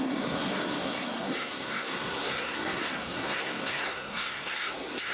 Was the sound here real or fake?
fake